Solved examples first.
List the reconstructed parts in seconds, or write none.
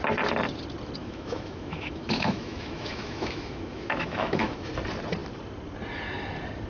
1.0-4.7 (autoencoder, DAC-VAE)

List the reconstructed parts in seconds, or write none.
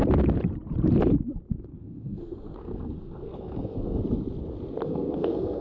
1.7-4.0 (codec, SNAC); 4.8-5.6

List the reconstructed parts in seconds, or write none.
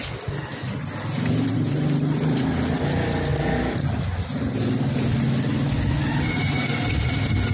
none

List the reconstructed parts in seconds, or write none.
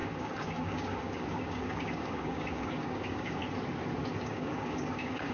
0.0-3.4 (codec, DAC); 4.1-5.3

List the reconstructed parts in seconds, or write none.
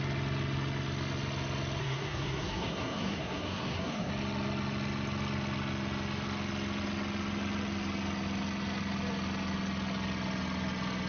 1.8-4.1 (codec, SNAC)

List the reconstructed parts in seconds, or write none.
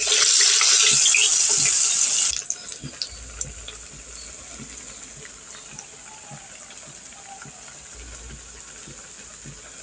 none